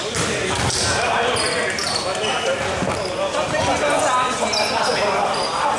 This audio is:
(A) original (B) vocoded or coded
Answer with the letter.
A